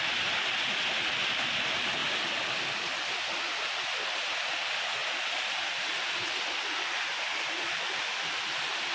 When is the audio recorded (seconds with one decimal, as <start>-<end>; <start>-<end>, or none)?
0.0-8.9

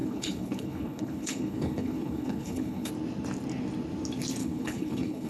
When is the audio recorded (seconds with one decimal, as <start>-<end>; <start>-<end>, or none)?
2.9-4.4

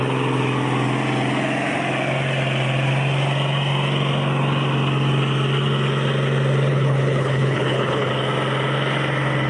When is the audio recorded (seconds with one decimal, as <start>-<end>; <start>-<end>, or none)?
0.0-6.7; 8.1-9.5

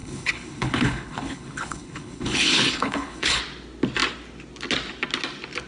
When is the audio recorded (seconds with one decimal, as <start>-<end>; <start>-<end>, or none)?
3.4-5.7

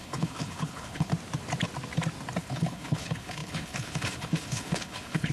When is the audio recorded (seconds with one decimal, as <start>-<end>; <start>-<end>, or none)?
1.1-2.4

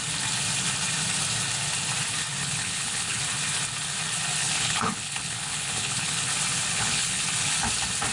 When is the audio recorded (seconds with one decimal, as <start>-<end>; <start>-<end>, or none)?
0.0-2.4; 3.2-4.4; 6.2-6.7; 7.2-8.1